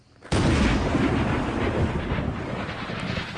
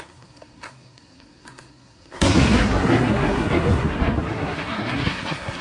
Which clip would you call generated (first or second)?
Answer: second